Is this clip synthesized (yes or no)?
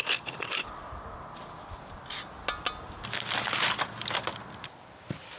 no